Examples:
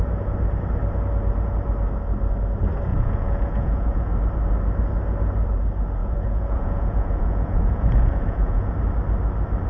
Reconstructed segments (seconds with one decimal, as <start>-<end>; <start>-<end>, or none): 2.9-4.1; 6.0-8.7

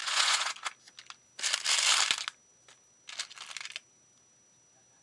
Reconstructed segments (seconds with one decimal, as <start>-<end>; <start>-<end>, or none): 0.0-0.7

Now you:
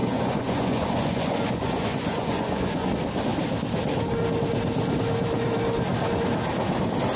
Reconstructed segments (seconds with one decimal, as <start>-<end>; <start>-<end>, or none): 0.0-2.9

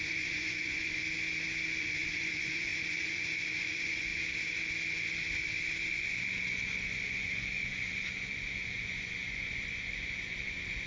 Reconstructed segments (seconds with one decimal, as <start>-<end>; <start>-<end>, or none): 0.0-1.0; 1.8-4.1; 5.9-10.9